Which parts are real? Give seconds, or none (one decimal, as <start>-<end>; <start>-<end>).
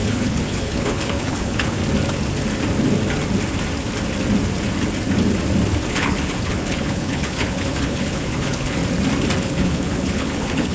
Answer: 1.8-5.9; 8.8-9.4